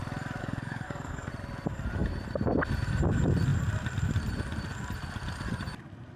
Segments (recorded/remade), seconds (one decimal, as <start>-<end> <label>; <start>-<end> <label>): 0.0-0.4 recorded; 0.4-1.3 remade; 1.3-6.2 recorded